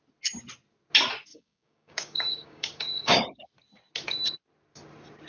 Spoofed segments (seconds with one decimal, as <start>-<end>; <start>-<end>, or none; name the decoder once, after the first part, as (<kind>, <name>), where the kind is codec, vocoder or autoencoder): 1.3-3.4 (codec, DAC)

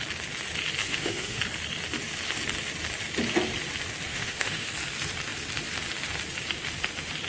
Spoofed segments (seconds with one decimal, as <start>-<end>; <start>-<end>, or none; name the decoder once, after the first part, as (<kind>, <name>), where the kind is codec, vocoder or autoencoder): 0.8-1.4 (autoencoder, DAC-VAE); 4.1-4.7

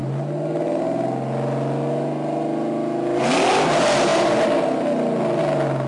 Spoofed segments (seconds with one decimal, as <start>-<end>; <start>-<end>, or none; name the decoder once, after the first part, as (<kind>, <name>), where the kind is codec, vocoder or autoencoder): none

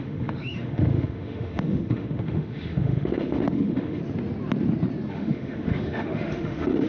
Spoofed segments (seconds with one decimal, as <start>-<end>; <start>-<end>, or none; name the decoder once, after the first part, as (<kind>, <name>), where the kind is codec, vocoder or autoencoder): 0.0-4.0 (autoencoder, DAC-VAE); 5.1-6.9